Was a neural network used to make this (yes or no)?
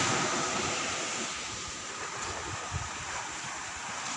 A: no